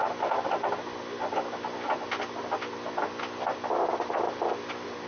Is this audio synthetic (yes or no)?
no